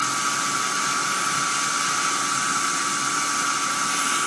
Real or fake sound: real